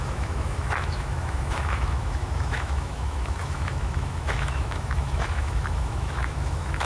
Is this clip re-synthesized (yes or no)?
yes